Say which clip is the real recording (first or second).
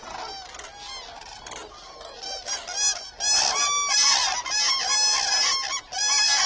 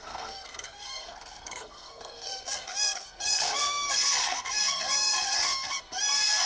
first